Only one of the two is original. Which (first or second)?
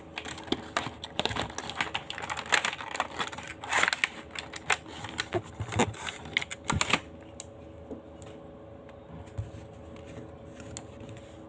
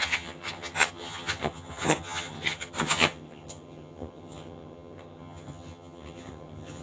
first